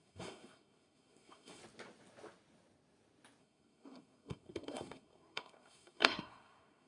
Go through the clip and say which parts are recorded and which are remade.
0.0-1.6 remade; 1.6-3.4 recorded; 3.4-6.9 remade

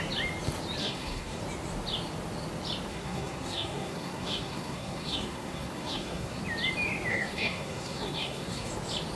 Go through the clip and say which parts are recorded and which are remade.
0.0-0.8 recorded; 0.8-1.4 remade; 1.4-2.9 recorded; 2.9-6.4 remade; 6.4-7.1 recorded; 7.1-8.7 remade; 8.7-9.2 recorded

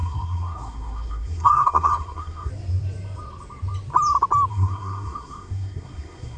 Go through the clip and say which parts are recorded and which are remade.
0.0-2.5 remade; 2.5-4.5 recorded; 4.5-6.4 remade

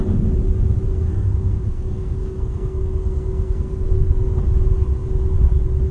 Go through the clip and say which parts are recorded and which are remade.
0.0-0.9 recorded; 0.9-4.4 remade; 4.4-5.9 recorded

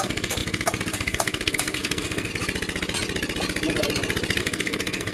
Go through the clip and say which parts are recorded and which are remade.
0.0-2.3 remade; 2.3-4.4 recorded; 4.4-5.1 remade

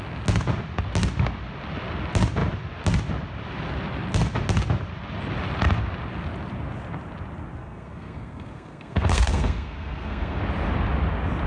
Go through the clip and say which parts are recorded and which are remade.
0.0-7.6 recorded; 7.6-10.4 remade; 10.4-11.5 recorded

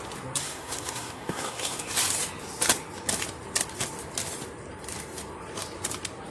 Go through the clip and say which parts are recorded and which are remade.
0.0-0.4 recorded; 0.4-1.9 remade; 1.9-6.3 recorded